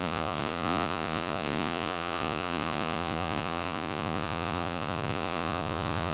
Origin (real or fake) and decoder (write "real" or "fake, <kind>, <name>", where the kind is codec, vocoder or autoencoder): fake, vocoder, Vocos